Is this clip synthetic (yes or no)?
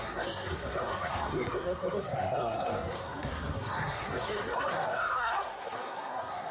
yes